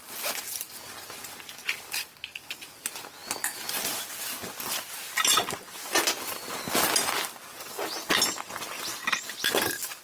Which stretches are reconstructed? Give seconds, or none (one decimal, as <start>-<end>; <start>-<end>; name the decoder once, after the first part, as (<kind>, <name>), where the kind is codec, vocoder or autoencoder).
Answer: none

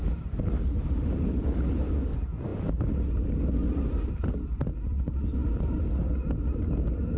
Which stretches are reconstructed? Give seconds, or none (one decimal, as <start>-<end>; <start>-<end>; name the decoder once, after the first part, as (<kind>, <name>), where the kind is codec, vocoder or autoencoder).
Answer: 0.8-1.9 (vocoder, BigVGAN v2); 5.4-5.9

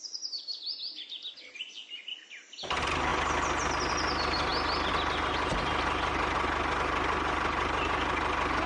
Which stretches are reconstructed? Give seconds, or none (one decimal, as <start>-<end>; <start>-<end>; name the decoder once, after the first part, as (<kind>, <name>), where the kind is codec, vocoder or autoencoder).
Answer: none

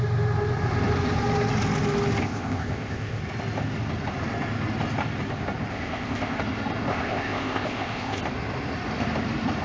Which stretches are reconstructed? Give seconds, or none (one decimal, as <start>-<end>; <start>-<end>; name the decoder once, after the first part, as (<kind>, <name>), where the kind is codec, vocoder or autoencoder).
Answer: 2.2-3.2 (codec, ZipCodec); 5.7-6.4; 6.9-8.2

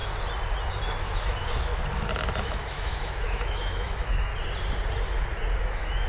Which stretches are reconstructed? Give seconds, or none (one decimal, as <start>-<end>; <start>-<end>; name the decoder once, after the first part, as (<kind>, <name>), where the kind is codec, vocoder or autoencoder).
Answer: 1.0-1.7 (autoencoder, DAC-VAE); 2.4-4.3; 5.6-6.1